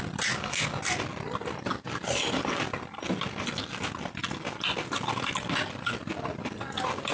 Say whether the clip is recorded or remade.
recorded